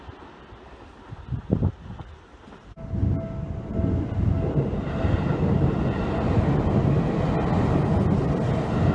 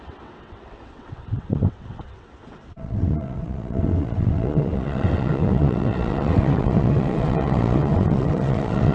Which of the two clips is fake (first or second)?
second